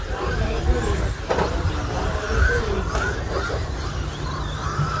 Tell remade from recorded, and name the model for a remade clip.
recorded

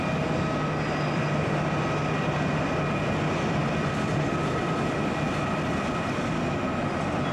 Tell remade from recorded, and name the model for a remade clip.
recorded